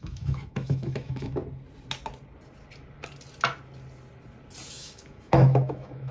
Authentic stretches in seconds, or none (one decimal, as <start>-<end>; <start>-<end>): 1.4-4.7